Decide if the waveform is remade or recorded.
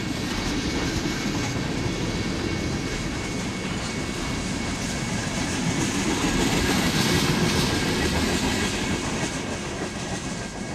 recorded